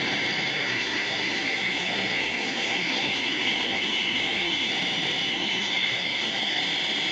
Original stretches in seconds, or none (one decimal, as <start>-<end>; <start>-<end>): 0.0-0.5; 4.7-5.3; 6.6-7.1